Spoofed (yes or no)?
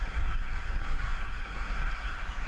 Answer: yes